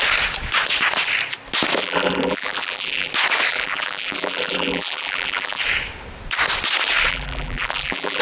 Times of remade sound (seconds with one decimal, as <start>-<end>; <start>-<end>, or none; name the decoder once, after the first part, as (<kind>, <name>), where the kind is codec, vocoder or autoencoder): 1.8-3.1 (vocoder, BigVGAN v2); 3.5-5.6; 7.1-8.2

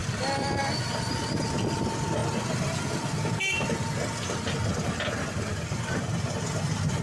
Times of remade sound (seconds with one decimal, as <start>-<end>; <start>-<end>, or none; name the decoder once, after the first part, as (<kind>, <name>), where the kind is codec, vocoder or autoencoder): 0.0-0.6 (vocoder, BigVGAN v2)

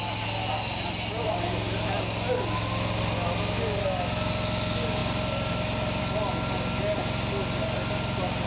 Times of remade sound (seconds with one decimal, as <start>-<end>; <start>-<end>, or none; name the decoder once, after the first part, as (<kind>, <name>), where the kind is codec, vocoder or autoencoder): none